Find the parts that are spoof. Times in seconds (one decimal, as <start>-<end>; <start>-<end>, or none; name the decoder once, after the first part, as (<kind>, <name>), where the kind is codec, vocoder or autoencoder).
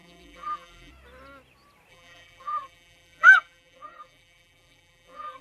0.0-0.9 (vocoder, BigVGAN v2); 1.9-5.4